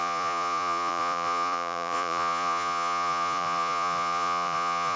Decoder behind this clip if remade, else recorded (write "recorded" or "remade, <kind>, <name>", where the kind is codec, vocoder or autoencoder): remade, vocoder, Vocos